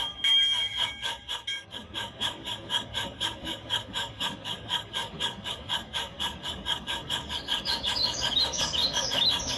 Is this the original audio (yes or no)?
no